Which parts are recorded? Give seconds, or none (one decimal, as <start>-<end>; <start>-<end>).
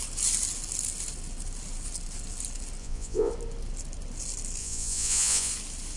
0.0-2.8; 3.3-4.6; 5.5-6.0